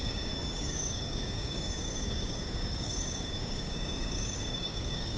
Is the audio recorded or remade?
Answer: remade